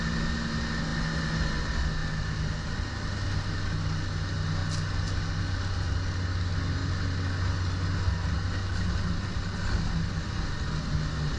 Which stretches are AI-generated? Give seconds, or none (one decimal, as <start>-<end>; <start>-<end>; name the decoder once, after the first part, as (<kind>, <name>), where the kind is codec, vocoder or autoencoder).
none